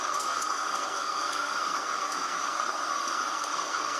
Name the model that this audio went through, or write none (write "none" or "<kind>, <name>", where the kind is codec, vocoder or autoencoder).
codec, SNAC